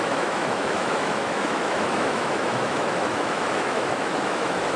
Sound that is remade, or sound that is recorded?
remade